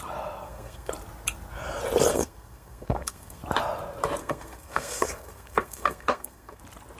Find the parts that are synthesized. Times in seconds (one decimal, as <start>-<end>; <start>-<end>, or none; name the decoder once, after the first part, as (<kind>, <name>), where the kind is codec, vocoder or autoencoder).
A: 0.4-0.9 (codec, SNAC); 2.1-3.4; 4.2-6.6